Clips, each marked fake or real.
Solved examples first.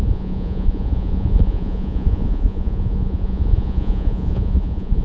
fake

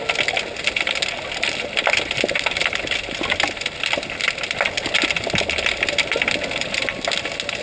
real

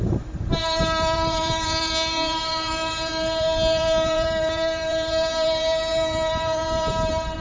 fake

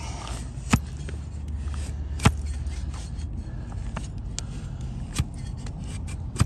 real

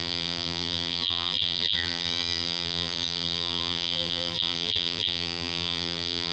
fake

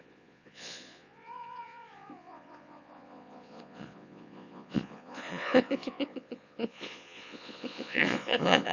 fake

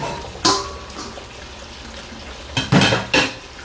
real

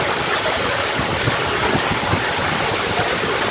real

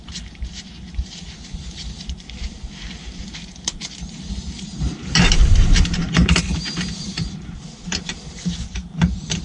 fake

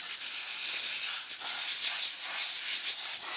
real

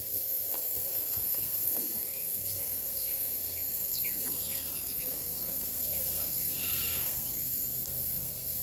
fake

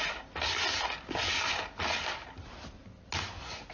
real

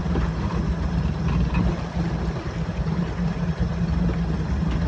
real